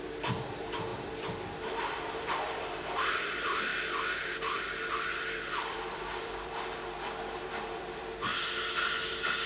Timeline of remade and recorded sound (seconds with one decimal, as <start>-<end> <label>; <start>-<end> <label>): 0.0-3.7 remade; 3.7-4.9 recorded; 4.9-8.3 remade; 8.3-9.5 recorded

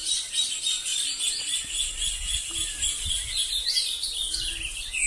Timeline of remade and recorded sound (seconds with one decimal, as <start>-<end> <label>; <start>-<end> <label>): 0.0-5.1 recorded

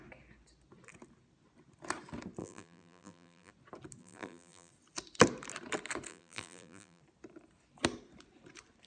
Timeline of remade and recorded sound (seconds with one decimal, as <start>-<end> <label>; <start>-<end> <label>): 0.0-2.4 recorded; 2.4-3.5 remade; 3.5-4.0 recorded; 4.0-4.7 remade; 4.7-6.1 recorded; 6.1-7.0 remade; 7.0-8.9 recorded

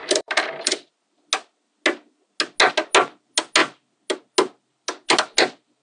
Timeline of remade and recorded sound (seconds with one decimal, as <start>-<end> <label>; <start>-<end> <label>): 0.0-1.2 remade; 1.2-5.8 recorded

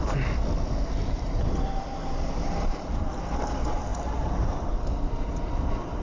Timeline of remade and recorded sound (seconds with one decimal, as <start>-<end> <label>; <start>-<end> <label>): 0.0-1.0 recorded; 1.0-3.1 remade; 3.1-6.0 recorded

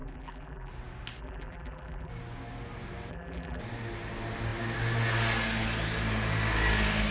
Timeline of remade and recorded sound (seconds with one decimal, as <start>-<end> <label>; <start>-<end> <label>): 0.0-0.7 remade; 0.7-1.2 recorded; 1.2-2.1 remade; 2.1-3.1 recorded; 3.1-3.6 remade; 3.6-7.1 recorded